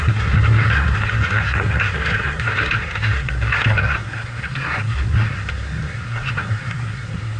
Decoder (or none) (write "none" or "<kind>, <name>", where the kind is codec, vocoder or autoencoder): codec, SNAC